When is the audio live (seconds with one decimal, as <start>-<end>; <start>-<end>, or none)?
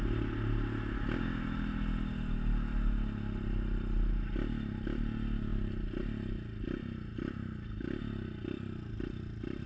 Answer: 0.0-9.7